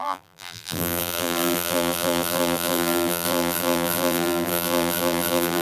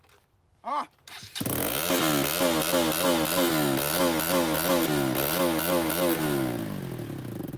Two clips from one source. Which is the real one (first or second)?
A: second